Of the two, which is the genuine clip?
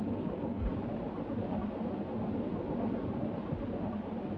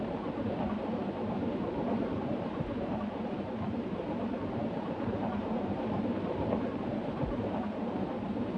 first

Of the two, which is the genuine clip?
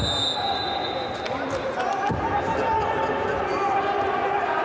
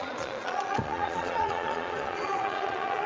first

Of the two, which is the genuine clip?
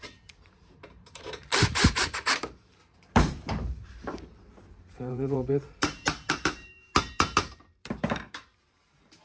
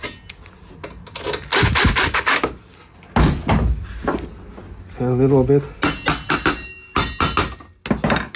second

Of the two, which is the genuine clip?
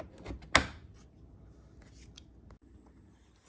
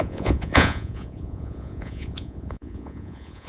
first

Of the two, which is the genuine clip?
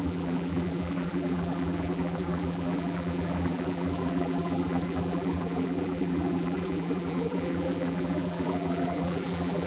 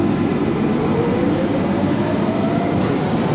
second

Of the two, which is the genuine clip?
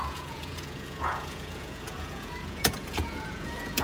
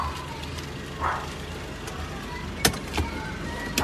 second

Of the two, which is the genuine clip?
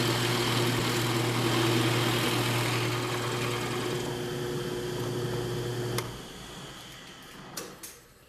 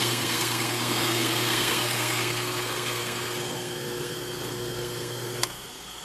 first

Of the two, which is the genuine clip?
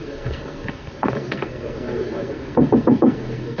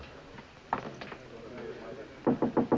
second